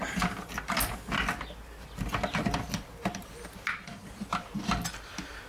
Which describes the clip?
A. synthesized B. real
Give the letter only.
B